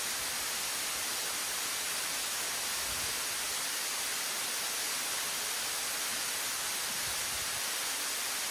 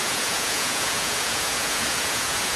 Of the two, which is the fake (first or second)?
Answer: second